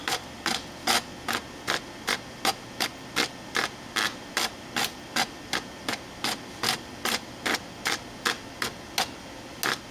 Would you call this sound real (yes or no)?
yes